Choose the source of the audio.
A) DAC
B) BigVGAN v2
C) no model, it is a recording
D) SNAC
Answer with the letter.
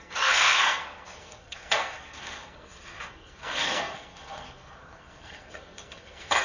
D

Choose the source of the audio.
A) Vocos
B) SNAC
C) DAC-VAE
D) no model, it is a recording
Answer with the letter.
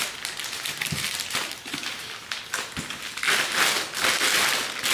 D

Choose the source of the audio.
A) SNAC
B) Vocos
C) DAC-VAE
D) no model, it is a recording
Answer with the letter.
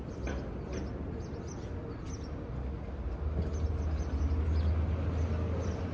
D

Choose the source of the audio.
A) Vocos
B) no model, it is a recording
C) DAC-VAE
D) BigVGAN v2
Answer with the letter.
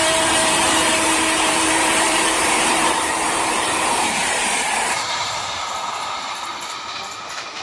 D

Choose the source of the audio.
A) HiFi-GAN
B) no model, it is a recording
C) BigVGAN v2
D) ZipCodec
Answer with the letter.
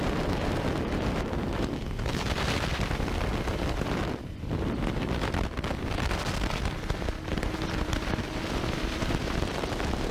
C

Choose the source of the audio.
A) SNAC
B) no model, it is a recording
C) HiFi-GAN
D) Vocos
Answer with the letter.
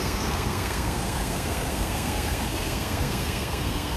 A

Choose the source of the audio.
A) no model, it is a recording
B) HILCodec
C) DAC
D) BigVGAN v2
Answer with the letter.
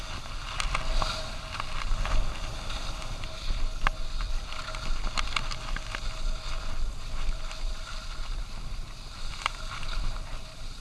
A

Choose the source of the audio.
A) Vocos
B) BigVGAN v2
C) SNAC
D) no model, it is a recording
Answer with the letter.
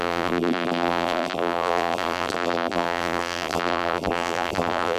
B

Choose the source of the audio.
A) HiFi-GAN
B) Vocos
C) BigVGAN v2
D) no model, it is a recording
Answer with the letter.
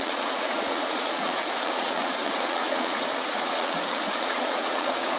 B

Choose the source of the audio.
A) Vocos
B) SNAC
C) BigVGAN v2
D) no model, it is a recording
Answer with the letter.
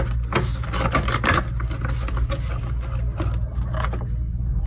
D